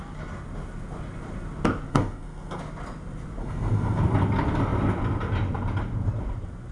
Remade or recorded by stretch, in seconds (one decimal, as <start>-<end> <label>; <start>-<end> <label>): 0.0-1.9 recorded; 1.9-2.6 remade; 2.6-3.4 recorded; 3.4-4.0 remade; 4.0-6.7 recorded